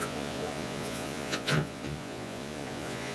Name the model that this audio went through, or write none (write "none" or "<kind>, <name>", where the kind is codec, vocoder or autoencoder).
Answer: vocoder, Vocos